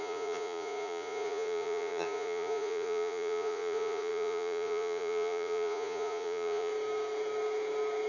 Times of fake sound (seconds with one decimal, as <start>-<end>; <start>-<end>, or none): 0.0-6.7